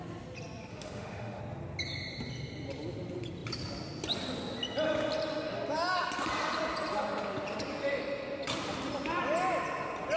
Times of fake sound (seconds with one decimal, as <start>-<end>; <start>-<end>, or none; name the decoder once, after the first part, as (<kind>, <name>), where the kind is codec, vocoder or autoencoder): 0.7-1.4 (autoencoder, DAC-VAE)